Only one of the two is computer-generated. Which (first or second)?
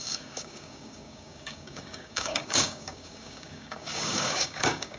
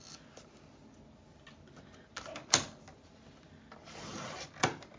first